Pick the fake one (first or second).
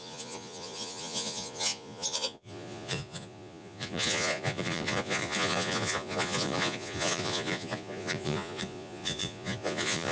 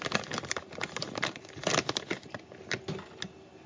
first